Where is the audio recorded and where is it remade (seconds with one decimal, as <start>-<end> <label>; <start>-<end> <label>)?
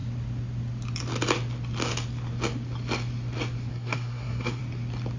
0.0-3.7 recorded; 3.7-4.6 remade; 4.6-5.2 recorded